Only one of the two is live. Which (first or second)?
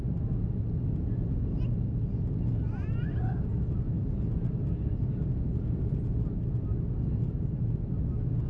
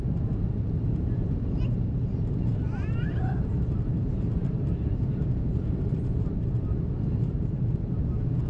first